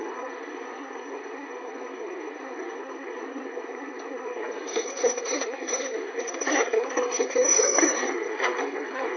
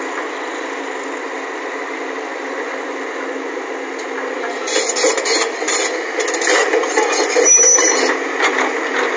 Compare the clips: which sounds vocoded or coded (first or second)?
first